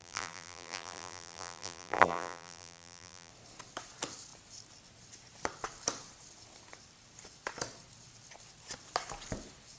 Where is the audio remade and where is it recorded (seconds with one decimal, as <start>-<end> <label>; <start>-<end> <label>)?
0.0-3.3 remade; 3.3-9.8 recorded